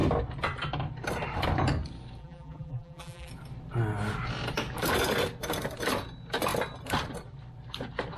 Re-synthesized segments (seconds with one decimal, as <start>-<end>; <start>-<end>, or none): 2.2-3.3